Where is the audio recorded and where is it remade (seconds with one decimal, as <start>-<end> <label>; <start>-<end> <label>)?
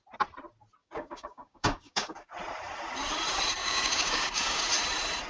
0.0-0.8 recorded; 0.8-2.3 remade; 2.3-3.6 recorded; 3.6-4.6 remade; 4.6-5.3 recorded